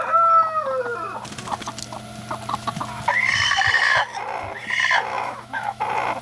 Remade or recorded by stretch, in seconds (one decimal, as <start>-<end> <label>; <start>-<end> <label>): 0.0-5.1 recorded; 5.1-5.8 remade; 5.8-6.2 recorded